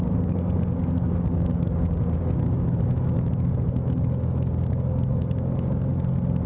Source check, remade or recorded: remade